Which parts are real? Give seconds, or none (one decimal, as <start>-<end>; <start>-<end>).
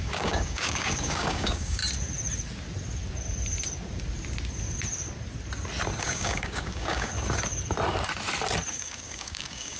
1.8-6.0; 7.1-8.7